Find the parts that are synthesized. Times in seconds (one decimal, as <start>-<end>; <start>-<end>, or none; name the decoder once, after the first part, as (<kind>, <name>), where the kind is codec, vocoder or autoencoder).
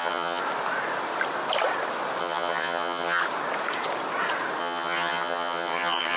0.0-0.4 (vocoder, HiFi-GAN); 2.2-3.2; 4.6-6.2